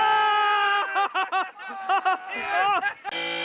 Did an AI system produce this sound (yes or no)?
no